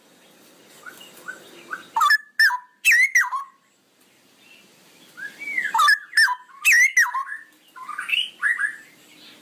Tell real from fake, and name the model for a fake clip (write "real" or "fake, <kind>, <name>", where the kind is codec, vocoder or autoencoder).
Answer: real